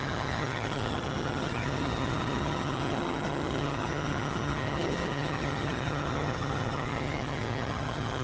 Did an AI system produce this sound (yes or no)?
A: yes